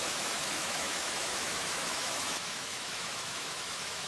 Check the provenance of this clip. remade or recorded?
remade